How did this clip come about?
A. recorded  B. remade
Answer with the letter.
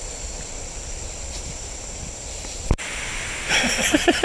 A